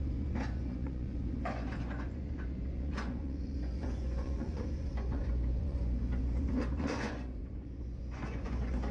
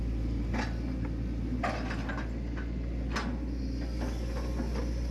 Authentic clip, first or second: second